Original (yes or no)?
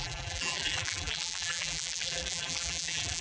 no